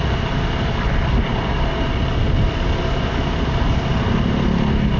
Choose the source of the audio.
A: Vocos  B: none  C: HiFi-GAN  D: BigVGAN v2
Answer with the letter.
B